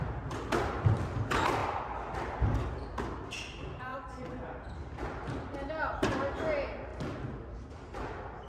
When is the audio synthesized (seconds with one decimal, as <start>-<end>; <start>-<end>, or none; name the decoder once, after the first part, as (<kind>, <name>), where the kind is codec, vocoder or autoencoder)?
none